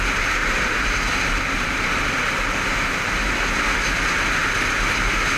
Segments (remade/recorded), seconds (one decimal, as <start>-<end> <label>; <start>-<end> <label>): 0.0-0.4 recorded; 0.4-3.6 remade; 3.6-4.4 recorded; 4.4-5.4 remade